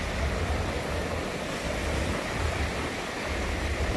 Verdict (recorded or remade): remade